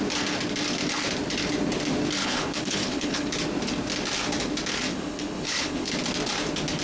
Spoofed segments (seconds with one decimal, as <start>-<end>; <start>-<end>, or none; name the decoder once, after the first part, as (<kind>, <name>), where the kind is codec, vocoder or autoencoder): 2.2-3.3 (codec, HILCodec); 4.9-5.9